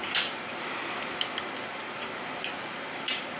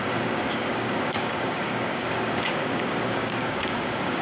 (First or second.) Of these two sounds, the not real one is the second